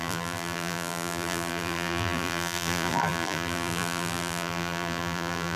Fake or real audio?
fake